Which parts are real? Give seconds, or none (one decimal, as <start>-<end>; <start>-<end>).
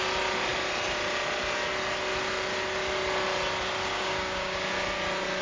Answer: 0.0-3.9; 4.6-5.4